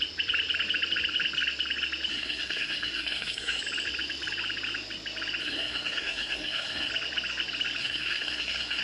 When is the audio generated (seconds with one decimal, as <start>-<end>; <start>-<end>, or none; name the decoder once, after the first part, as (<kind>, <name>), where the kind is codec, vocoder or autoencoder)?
2.1-3.6 (codec, SNAC); 5.4-6.9; 7.8-8.8